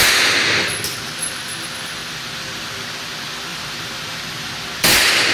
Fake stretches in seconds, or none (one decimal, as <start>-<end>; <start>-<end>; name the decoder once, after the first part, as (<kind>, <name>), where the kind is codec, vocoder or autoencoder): 3.5-4.5 (vocoder, BigVGAN v2)